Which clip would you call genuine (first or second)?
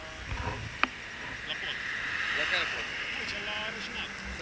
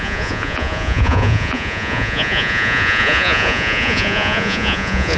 first